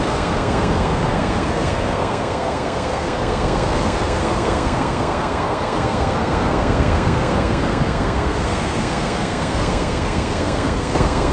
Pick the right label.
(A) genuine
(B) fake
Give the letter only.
B